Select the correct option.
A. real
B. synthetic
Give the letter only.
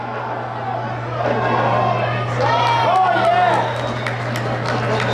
A